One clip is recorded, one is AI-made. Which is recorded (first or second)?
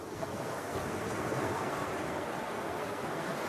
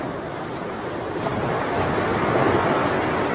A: second